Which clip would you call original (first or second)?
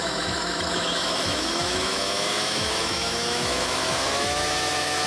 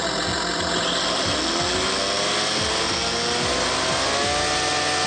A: second